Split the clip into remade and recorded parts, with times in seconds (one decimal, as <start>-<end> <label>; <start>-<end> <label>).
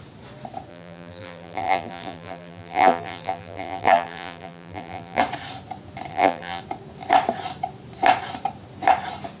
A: 0.0-0.7 recorded; 0.7-5.2 remade; 5.2-6.1 recorded; 6.1-6.6 remade; 6.6-9.4 recorded